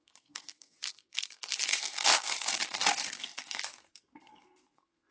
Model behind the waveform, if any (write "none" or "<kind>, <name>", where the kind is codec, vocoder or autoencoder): codec, SNAC